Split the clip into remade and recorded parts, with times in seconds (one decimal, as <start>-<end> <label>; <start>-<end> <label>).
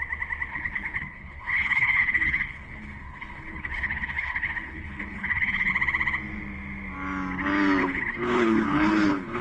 0.0-0.5 recorded; 0.5-5.7 remade; 5.7-7.8 recorded; 7.8-9.4 remade